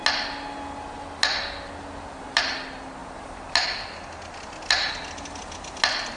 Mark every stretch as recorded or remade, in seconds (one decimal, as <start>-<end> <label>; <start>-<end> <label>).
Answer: 0.0-6.2 recorded